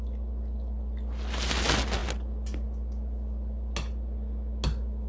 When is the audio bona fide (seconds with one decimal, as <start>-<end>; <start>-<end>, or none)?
0.0-5.1